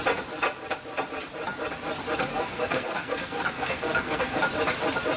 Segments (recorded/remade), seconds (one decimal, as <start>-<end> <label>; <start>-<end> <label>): 0.0-2.3 recorded; 2.3-4.4 remade; 4.4-5.2 recorded